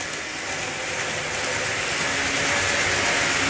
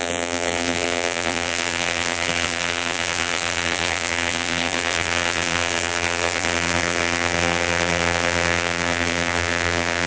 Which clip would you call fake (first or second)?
second